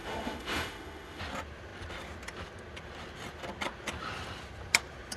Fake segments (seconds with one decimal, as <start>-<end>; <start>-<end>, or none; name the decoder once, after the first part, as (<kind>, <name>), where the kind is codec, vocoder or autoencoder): 0.0-1.2 (autoencoder, DAC-VAE)